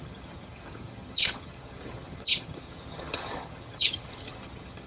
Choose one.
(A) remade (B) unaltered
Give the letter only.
A